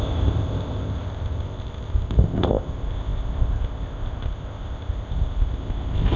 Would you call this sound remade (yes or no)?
yes